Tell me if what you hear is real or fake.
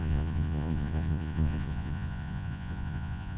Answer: fake